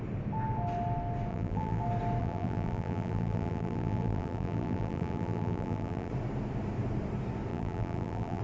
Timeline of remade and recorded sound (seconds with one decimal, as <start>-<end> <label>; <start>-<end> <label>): 0.0-1.3 recorded; 1.3-1.8 remade; 1.8-2.2 recorded; 2.2-6.1 remade; 6.1-7.5 recorded; 7.5-8.4 remade